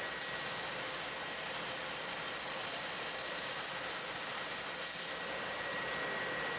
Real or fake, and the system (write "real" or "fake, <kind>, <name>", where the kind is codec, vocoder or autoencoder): real